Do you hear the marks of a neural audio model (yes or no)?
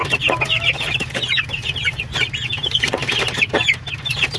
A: yes